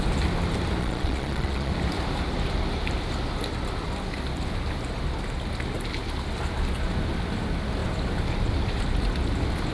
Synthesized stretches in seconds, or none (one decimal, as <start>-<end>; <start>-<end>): 0.8-1.7